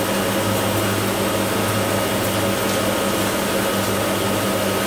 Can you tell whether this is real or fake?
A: real